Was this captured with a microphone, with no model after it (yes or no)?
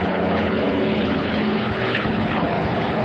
no